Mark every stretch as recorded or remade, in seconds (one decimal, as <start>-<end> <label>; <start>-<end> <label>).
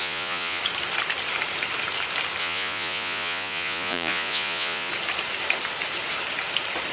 0.0-0.6 remade; 0.6-2.4 recorded; 2.4-4.9 remade; 4.9-6.9 recorded